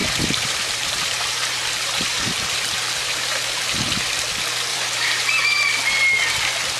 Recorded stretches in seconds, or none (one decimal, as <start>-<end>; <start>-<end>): 3.8-4.7; 5.8-6.8